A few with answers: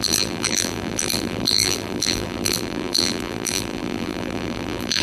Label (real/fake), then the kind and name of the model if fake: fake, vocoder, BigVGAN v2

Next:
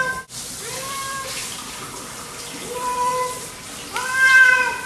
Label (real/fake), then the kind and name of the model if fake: fake, vocoder, BigVGAN v2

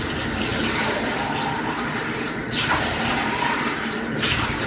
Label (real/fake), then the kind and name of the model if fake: fake, vocoder, BigVGAN v2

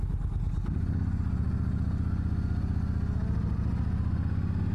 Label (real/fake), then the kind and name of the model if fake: real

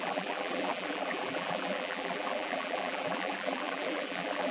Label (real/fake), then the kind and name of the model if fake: fake, vocoder, BigVGAN v2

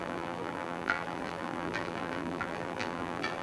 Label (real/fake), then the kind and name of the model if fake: fake, vocoder, BigVGAN v2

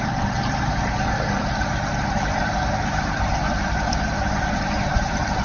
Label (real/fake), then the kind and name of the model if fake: fake, vocoder, BigVGAN v2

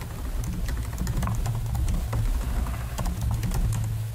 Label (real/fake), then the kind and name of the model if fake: real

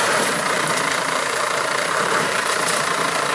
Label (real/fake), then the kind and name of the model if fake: fake, vocoder, BigVGAN v2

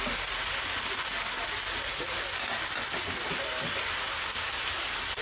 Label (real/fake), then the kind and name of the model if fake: real